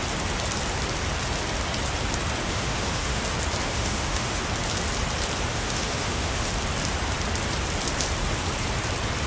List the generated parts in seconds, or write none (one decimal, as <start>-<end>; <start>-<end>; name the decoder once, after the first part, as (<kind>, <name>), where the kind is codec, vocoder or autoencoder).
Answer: 2.4-3.2 (autoencoder, DAC-VAE); 3.7-4.4; 5.5-6.5